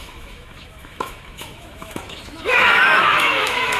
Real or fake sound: fake